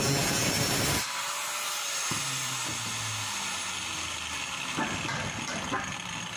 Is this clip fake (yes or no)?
no